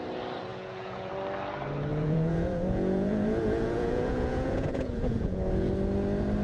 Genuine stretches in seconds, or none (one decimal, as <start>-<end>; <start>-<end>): 0.0-0.5; 1.1-1.9; 5.7-6.4